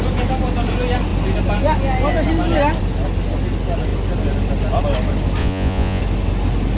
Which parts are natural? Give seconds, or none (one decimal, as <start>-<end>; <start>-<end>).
0.0-5.4; 6.0-6.8